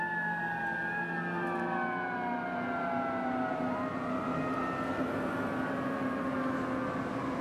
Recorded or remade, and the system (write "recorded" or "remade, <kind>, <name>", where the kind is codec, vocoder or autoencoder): recorded